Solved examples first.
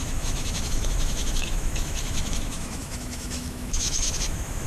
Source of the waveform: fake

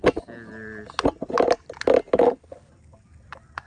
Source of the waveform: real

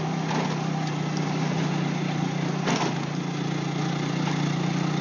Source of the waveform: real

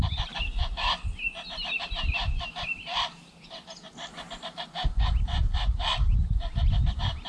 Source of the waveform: fake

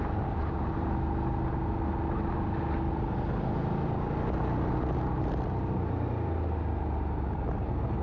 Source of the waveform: real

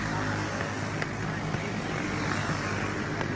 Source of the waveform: real